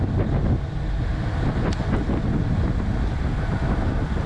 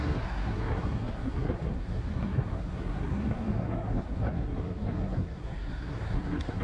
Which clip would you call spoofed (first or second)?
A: second